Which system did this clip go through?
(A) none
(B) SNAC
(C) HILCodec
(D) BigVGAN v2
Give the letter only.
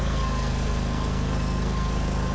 B